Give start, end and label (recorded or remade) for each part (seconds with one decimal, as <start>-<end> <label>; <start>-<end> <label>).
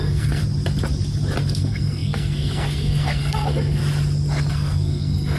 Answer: 0.0-0.4 remade; 0.4-1.4 recorded; 1.4-3.8 remade; 3.8-4.5 recorded; 4.5-5.4 remade